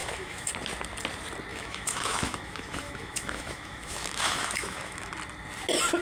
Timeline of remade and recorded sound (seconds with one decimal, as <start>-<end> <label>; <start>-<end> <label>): 0.0-0.5 remade; 0.5-1.5 recorded; 1.5-5.1 remade; 5.1-6.0 recorded